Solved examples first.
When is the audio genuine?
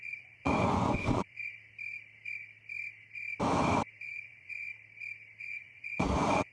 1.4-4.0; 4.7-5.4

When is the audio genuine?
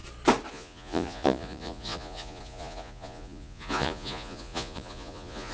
0.0-0.5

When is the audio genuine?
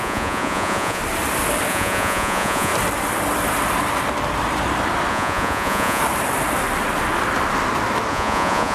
1.0-1.7; 2.7-5.1; 6.0-8.1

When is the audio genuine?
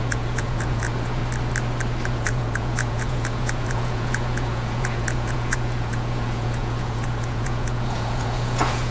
1.2-2.1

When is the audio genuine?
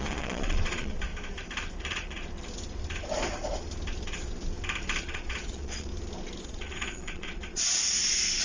1.1-1.8; 2.2-5.0; 5.9-6.4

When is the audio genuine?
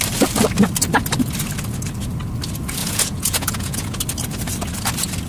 0.0-2.8; 4.0-5.3